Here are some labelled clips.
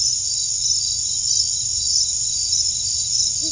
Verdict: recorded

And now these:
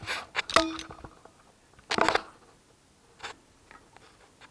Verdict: recorded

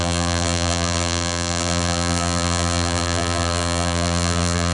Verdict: remade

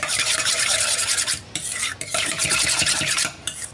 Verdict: remade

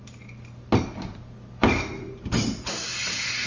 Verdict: recorded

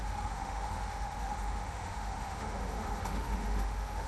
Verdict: remade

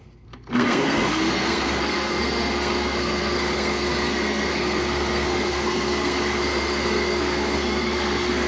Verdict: remade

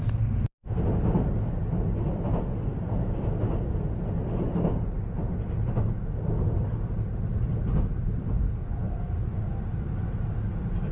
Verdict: recorded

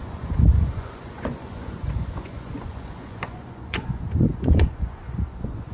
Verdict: remade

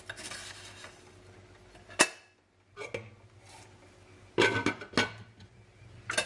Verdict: recorded